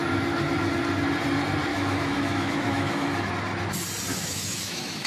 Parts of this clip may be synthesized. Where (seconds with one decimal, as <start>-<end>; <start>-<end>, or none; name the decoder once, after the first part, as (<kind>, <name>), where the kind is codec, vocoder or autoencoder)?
1.7-3.3 (autoencoder, DAC-VAE); 4.1-5.1